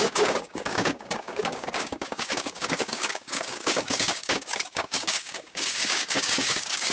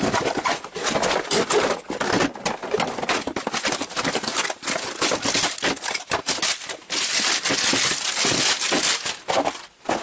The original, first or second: second